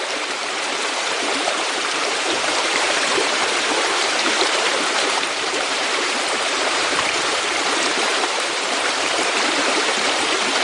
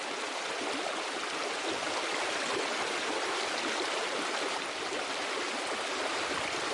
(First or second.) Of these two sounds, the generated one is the first